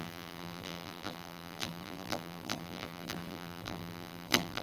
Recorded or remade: remade